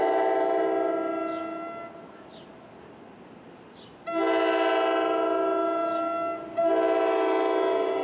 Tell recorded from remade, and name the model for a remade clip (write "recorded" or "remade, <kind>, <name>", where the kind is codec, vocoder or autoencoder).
recorded